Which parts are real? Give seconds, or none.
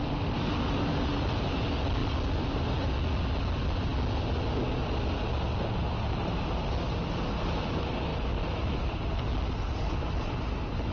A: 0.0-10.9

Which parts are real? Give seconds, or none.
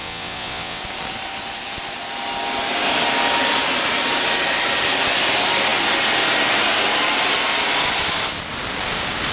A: 0.8-9.3